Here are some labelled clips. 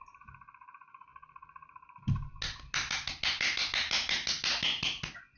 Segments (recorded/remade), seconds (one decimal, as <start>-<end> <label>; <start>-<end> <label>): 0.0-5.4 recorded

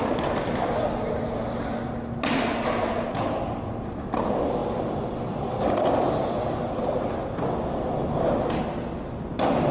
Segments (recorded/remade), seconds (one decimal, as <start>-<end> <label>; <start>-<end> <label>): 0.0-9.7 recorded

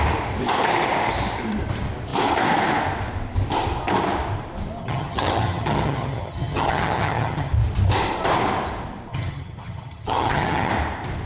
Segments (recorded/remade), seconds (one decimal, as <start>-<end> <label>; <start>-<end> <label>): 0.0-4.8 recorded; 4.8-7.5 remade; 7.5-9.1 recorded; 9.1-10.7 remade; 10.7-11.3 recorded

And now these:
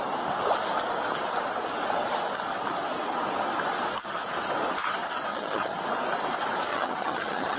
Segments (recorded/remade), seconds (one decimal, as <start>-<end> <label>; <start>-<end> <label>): 0.0-5.3 recorded; 5.3-5.8 remade; 5.8-6.7 recorded; 6.7-7.6 remade